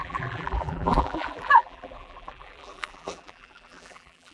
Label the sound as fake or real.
fake